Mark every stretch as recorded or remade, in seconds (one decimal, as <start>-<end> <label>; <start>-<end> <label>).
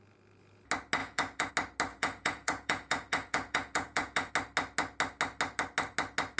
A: 0.0-1.0 recorded; 1.0-1.5 remade; 1.5-1.9 recorded; 1.9-4.3 remade; 4.3-6.4 recorded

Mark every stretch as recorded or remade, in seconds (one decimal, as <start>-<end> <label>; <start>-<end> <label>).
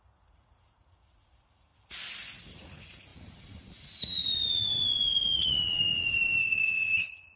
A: 0.0-1.7 remade; 1.7-2.4 recorded; 2.4-7.4 remade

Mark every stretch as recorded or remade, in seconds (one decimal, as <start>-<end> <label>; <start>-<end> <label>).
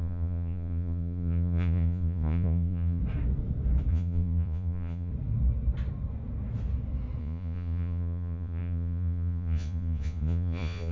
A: 0.0-3.0 remade; 3.0-3.9 recorded; 3.9-5.1 remade; 5.1-7.2 recorded; 7.2-10.9 remade